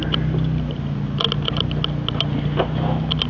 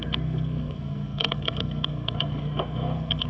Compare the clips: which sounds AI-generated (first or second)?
second